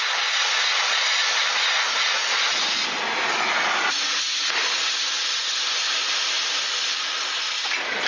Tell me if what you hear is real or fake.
real